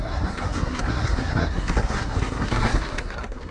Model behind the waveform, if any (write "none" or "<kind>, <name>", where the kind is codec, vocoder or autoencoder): codec, SNAC